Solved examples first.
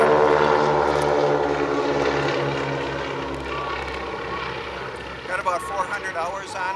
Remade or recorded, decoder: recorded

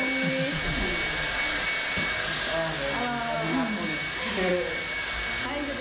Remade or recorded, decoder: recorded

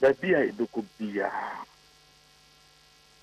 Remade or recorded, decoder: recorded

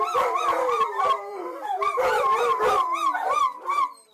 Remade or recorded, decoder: remade, vocoder, BigVGAN v2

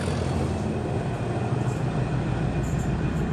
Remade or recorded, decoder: recorded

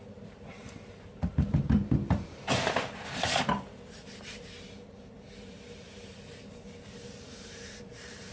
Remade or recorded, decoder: remade, vocoder, BigVGAN v2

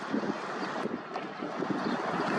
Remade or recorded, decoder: recorded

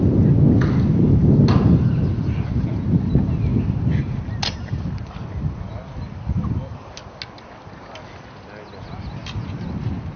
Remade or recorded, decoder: recorded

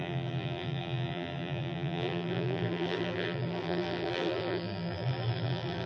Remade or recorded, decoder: remade, vocoder, BigVGAN v2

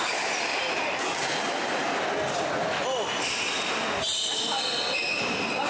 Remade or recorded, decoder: recorded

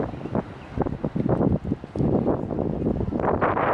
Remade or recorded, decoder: recorded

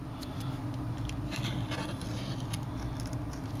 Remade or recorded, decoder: recorded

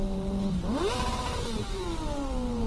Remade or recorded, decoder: remade, vocoder, BigVGAN v2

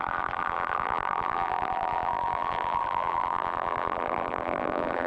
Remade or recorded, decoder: remade, vocoder, BigVGAN v2